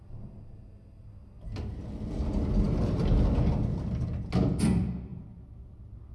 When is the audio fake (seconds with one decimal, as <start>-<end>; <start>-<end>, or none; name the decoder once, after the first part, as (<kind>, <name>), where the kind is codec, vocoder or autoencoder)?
none